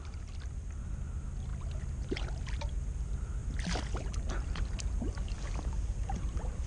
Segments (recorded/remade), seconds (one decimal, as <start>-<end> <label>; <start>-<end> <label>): 0.0-6.7 recorded